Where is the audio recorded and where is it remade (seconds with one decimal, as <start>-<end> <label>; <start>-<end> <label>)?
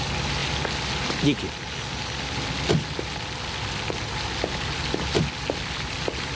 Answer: 0.0-6.3 recorded